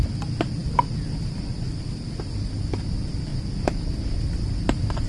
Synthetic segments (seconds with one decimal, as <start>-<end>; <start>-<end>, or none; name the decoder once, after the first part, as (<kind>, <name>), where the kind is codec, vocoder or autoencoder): 0.0-0.6 (vocoder, BigVGAN v2); 1.3-3.3; 4.3-5.1